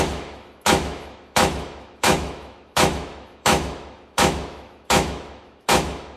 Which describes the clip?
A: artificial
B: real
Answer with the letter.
A